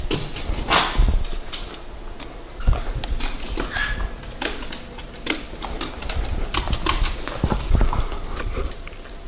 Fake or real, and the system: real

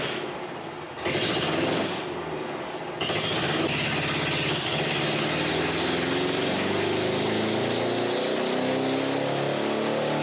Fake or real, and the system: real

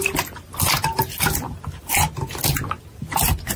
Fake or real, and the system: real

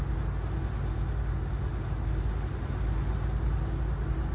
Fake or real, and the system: real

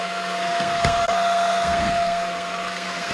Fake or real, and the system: fake, codec, SNAC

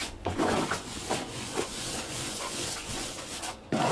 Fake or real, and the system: fake, vocoder, Vocos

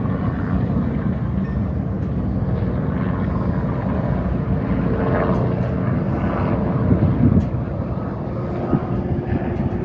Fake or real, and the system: real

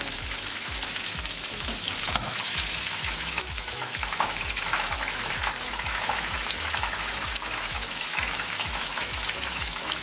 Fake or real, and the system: fake, autoencoder, DAC-VAE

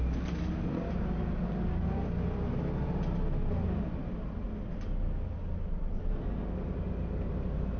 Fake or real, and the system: real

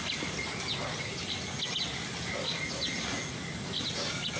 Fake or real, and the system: real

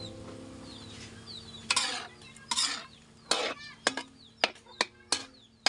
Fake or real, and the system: real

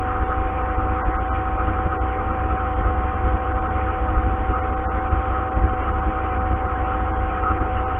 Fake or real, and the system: fake, vocoder, BigVGAN v2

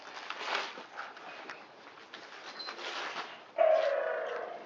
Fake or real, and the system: real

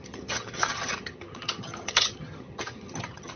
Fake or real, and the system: fake, vocoder, HiFi-GAN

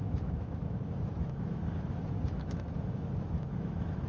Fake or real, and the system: fake, autoencoder, DAC-VAE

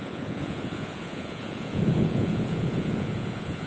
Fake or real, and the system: fake, vocoder, Vocos